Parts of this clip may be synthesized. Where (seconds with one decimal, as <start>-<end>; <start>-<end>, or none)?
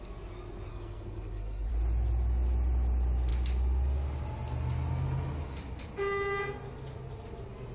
0.7-1.7